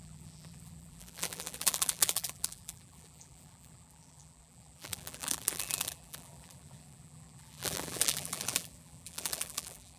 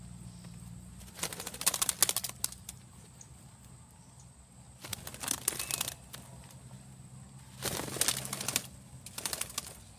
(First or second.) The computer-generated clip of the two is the first